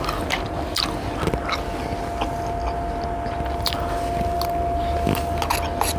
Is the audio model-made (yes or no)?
no